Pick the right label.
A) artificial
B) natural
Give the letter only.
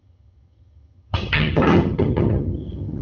A